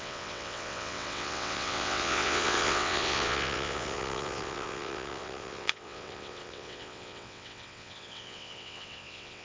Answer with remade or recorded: remade